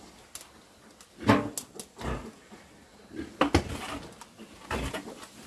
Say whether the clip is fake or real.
real